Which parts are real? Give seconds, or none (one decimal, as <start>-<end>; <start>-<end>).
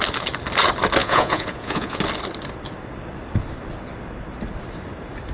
0.0-1.0; 2.0-5.3